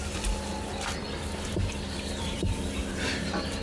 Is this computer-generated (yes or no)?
yes